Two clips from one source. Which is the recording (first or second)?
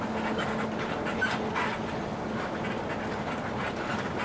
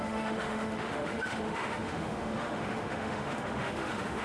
first